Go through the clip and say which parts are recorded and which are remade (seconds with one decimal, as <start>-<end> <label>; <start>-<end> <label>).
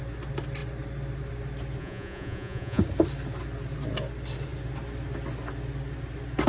0.0-1.8 recorded; 1.8-2.8 remade; 2.8-6.5 recorded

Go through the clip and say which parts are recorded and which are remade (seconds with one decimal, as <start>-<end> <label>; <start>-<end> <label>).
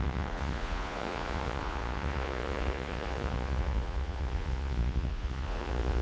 0.0-6.0 remade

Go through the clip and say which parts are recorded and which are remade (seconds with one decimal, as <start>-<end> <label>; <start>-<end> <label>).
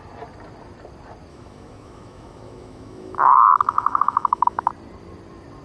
0.0-1.3 recorded; 1.3-4.7 remade; 4.7-5.6 recorded